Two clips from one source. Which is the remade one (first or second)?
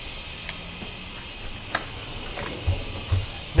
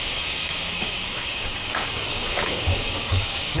second